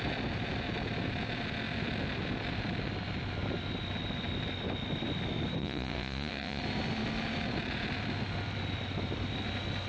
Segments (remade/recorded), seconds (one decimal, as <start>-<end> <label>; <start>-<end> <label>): 0.0-5.6 recorded; 5.6-6.6 remade; 6.6-9.9 recorded